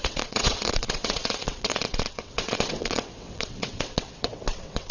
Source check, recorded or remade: remade